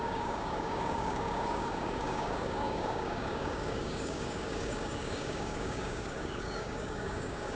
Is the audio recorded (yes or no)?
no